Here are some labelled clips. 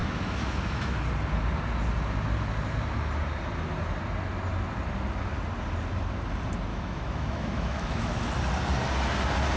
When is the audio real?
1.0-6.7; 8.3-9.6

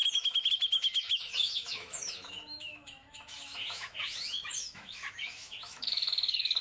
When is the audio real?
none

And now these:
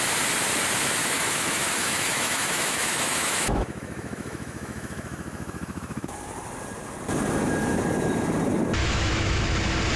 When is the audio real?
0.0-1.0; 6.1-8.8; 9.4-10.0